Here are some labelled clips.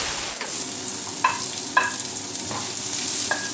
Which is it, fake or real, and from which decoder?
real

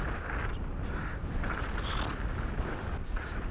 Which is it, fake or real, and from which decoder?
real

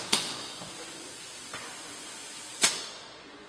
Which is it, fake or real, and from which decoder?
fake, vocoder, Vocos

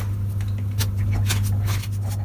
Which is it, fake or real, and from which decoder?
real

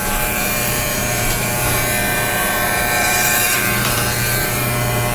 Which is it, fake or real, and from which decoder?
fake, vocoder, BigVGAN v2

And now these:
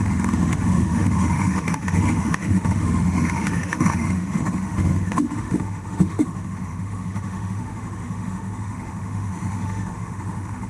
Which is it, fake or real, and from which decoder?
fake, autoencoder, DAC-VAE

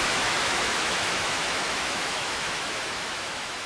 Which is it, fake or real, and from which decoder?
fake, autoencoder, DAC-VAE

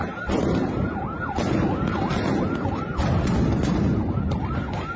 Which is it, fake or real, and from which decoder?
real